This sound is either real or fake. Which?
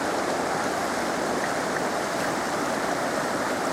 real